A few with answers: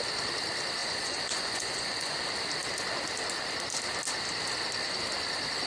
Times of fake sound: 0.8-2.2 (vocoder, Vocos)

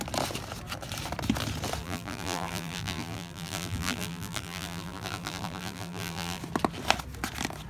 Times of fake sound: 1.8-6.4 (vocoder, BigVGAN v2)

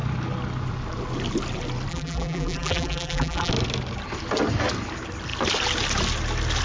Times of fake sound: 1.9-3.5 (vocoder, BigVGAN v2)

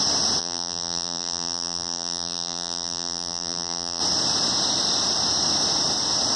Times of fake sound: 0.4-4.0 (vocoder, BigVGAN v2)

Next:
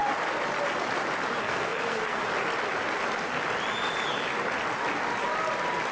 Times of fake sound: 1.4-2.2 (codec, SNAC)